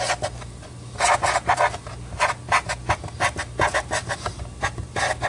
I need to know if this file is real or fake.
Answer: real